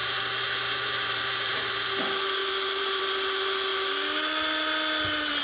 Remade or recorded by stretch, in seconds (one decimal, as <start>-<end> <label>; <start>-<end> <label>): 0.0-1.7 remade; 1.7-2.4 recorded; 2.4-3.0 remade; 3.0-5.4 recorded